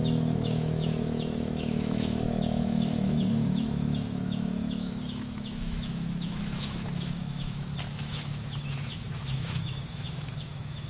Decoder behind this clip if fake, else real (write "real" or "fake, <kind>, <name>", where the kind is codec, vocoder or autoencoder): fake, autoencoder, DAC-VAE